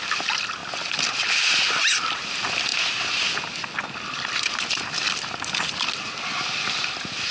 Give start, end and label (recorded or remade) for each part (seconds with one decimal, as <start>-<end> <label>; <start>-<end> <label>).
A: 0.0-7.3 recorded